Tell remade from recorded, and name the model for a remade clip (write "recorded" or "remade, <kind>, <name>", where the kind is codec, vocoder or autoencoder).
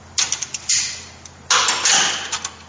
recorded